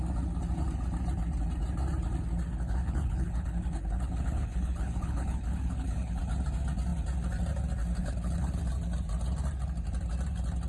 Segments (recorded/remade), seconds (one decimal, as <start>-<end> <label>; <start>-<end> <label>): 0.0-2.5 recorded; 2.5-6.2 remade; 6.2-8.0 recorded; 8.0-8.6 remade; 8.6-10.7 recorded